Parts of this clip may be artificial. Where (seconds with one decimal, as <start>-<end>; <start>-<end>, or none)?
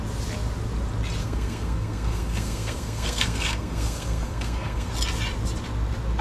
1.2-4.9